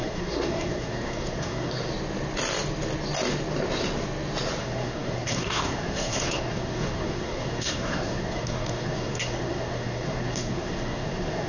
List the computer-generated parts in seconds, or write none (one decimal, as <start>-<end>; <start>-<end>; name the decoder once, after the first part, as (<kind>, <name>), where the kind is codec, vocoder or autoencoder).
0.0-1.9 (codec, SNAC); 4.6-11.5